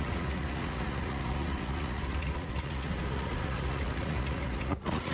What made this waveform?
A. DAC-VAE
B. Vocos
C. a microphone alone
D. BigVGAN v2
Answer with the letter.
B